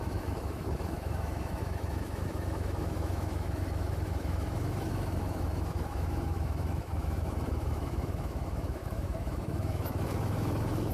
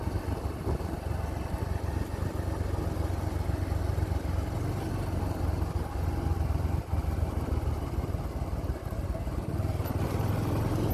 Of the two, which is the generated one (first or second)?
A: first